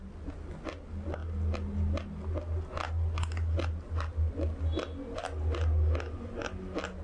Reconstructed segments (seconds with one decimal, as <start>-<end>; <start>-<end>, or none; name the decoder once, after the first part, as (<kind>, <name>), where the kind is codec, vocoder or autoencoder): none